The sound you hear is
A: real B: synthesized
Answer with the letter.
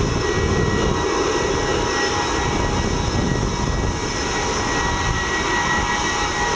A